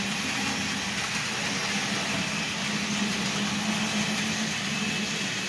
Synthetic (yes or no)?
no